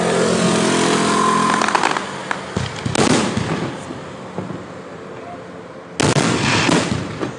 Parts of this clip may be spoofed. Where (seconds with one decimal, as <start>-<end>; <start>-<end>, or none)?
none